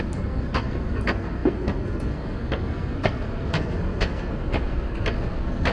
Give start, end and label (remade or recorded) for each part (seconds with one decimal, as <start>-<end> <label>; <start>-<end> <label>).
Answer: 0.0-5.7 remade